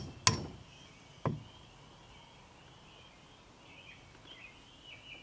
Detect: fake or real real